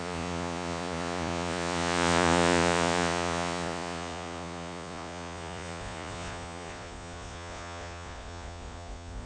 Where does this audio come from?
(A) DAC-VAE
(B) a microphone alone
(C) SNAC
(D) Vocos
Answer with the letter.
D